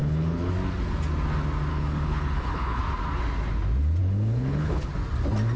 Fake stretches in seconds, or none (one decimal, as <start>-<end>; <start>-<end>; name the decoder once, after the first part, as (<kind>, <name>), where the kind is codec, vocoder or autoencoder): 0.0-0.5 (codec, HILCodec); 1.7-2.8; 4.0-4.9